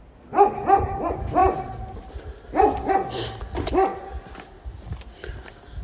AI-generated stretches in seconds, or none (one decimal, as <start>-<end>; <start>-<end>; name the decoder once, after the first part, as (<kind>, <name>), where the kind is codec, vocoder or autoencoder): none

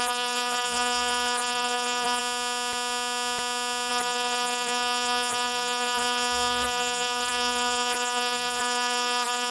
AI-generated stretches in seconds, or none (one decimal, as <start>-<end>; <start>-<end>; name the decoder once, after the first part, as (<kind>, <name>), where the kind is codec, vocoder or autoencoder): 0.0-2.2 (codec, SNAC); 3.9-9.5

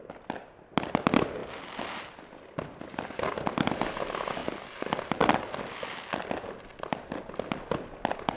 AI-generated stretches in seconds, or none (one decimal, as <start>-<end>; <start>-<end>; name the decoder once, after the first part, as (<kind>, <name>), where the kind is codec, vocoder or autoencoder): none

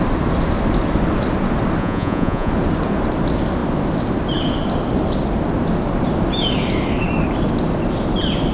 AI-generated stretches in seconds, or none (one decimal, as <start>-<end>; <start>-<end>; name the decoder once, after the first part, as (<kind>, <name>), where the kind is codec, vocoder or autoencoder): 1.8-2.5 (vocoder, Vocos)

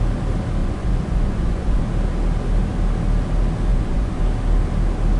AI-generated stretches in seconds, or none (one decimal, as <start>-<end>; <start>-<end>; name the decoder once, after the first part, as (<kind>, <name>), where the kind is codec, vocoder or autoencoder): 0.6-1.8 (vocoder, Vocos); 3.7-4.2